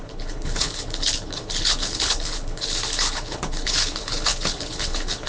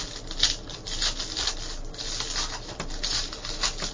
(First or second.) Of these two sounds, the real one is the second